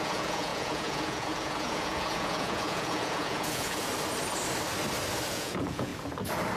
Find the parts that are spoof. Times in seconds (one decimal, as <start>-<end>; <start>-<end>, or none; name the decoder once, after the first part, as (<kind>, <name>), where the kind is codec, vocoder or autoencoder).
0.0-3.9 (vocoder, Vocos); 5.3-5.9